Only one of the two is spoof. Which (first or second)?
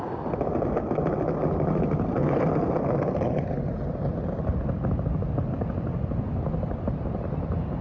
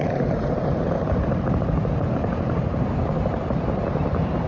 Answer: second